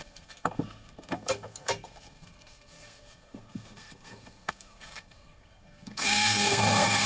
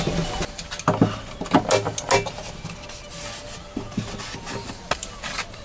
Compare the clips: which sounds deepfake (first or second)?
first